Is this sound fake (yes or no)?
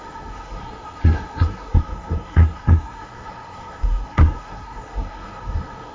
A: yes